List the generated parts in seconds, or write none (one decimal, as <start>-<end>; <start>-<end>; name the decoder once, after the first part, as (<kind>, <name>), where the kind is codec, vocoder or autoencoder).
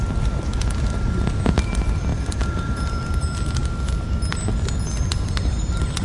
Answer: 0.0-0.5 (vocoder, BigVGAN v2); 1.4-3.6; 4.3-6.0